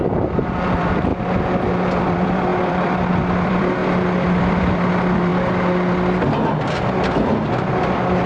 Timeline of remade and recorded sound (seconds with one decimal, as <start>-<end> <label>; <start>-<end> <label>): 0.0-1.1 remade; 1.1-2.0 recorded; 2.0-5.3 remade; 5.3-7.7 recorded; 7.7-8.3 remade